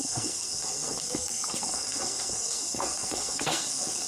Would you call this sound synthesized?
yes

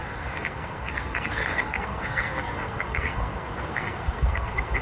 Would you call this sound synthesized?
yes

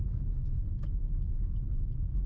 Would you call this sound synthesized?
no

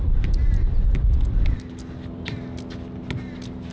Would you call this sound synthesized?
no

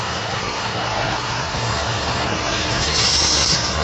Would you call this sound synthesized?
yes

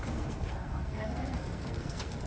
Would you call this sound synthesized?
yes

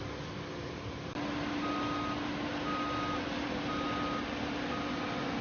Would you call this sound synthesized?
no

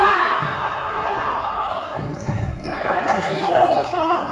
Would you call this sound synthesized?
yes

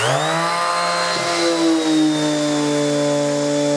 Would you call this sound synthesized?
no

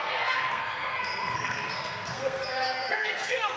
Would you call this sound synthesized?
yes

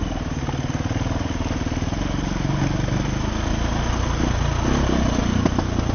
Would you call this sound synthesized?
no